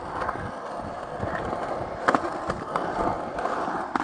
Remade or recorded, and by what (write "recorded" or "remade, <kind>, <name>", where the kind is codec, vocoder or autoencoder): recorded